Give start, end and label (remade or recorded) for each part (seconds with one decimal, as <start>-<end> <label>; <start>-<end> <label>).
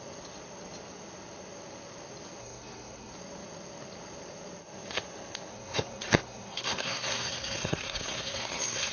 0.0-2.4 recorded; 2.4-3.1 remade; 3.1-5.5 recorded; 5.5-8.9 remade